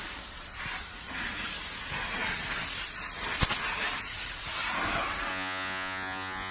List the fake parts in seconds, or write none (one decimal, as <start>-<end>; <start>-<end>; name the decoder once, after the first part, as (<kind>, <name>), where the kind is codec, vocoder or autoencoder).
5.3-6.5 (vocoder, Vocos)